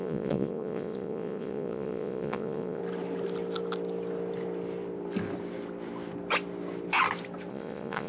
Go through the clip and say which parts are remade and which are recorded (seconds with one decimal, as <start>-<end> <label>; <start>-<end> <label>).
0.0-2.8 remade; 2.8-7.5 recorded; 7.5-8.1 remade